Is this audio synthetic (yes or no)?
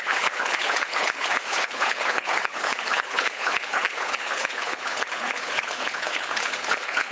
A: yes